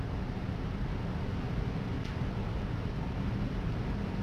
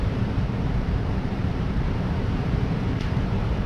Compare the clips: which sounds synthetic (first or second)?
second